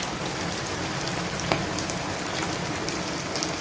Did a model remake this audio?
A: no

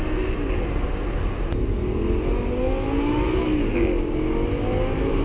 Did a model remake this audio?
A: no